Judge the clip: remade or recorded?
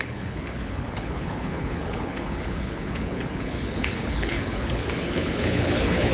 remade